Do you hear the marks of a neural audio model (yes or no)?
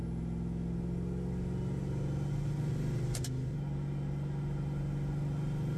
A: no